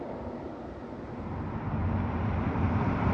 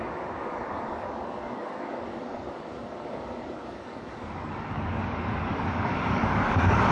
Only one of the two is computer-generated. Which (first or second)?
second